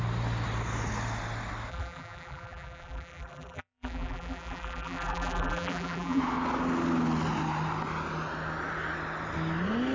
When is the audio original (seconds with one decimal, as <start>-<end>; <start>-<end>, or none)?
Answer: 0.0-1.7; 6.2-9.9

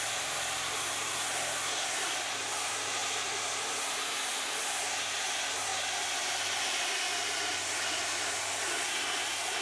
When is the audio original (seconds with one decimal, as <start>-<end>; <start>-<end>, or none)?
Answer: 0.0-9.6